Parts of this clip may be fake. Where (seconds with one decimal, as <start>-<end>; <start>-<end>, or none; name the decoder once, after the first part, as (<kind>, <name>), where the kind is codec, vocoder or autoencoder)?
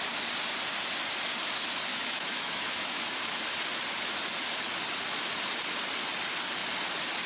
1.9-3.1 (autoencoder, DAC-VAE)